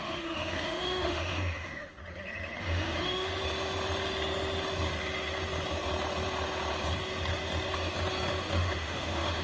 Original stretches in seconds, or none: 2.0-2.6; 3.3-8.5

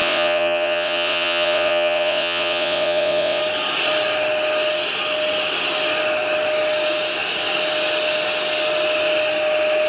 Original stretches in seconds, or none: 3.4-9.9

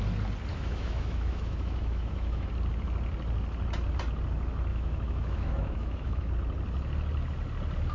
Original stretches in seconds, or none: 0.0-0.5; 2.5-4.7; 6.3-7.9

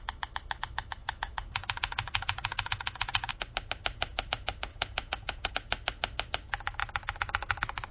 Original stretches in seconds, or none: 0.0-1.0; 3.3-4.7; 5.5-7.9

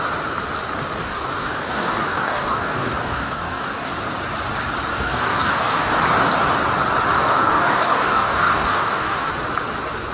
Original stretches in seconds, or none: 0.0-1.0; 3.9-4.9; 5.9-7.2; 9.3-10.1

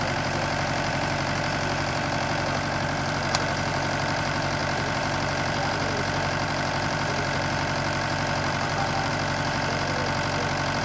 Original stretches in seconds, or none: 10.0-10.8

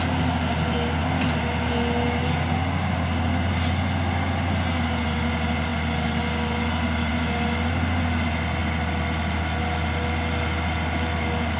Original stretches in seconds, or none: 0.0-11.6

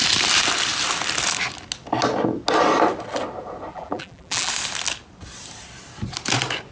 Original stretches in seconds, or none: 0.0-3.7; 4.5-6.7